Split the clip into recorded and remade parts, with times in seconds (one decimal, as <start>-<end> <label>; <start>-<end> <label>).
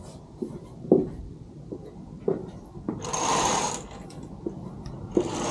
0.0-3.3 remade; 3.3-5.5 recorded